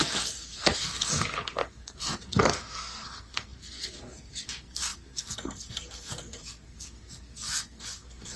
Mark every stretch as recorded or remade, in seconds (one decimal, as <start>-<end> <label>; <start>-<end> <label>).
0.0-8.4 remade